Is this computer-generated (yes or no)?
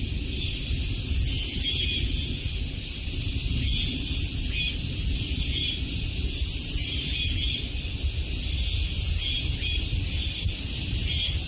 no